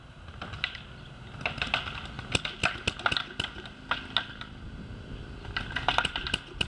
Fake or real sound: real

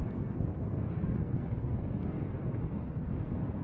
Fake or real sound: fake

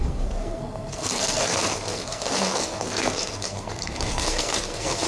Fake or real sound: fake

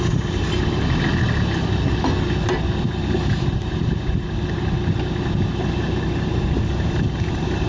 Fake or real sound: real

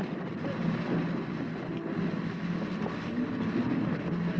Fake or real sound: real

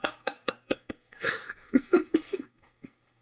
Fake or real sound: fake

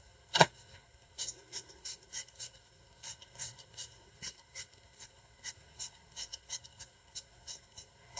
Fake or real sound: fake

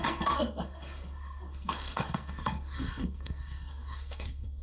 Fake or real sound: fake